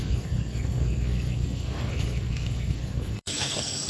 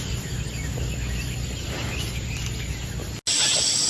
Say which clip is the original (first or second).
second